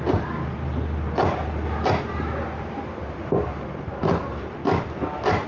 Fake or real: fake